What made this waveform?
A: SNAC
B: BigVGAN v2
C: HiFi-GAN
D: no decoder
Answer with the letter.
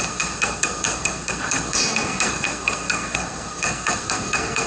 A